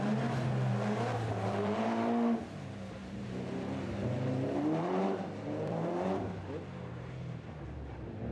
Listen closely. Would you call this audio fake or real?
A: fake